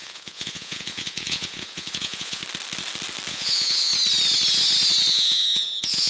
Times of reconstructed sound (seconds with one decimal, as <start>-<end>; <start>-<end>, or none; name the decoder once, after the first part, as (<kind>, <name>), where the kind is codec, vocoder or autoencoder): 0.0-2.4 (vocoder, Vocos); 3.3-3.9; 5.1-6.1